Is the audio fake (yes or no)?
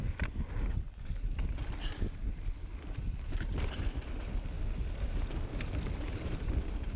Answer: no